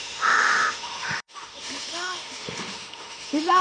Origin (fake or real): fake